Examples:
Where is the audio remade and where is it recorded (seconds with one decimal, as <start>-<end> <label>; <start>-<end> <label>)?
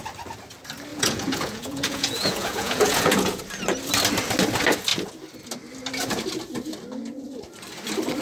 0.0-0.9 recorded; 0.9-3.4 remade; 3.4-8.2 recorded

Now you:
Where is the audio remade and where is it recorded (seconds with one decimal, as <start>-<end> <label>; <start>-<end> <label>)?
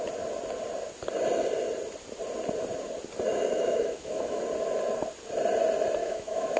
0.0-3.5 recorded; 3.5-4.4 remade; 4.4-6.0 recorded; 6.0-6.6 remade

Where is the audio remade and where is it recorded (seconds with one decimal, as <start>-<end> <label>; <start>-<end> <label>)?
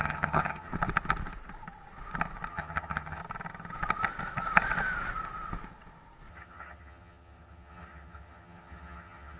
0.0-0.7 remade; 0.7-2.5 recorded; 2.5-3.2 remade; 3.2-6.3 recorded; 6.3-9.4 remade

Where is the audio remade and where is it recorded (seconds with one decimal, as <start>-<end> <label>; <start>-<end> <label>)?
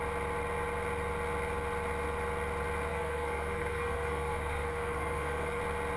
0.0-2.9 recorded; 2.9-5.6 remade; 5.6-6.0 recorded